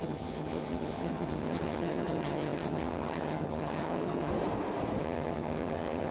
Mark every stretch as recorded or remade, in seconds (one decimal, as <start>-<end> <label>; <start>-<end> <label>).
0.0-4.3 remade; 4.3-5.0 recorded; 5.0-6.1 remade